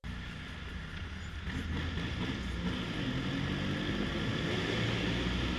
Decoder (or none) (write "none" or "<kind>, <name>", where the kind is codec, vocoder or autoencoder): none